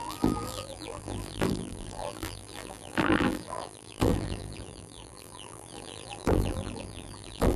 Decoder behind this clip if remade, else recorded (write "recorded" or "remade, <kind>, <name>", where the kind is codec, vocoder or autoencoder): remade, vocoder, BigVGAN v2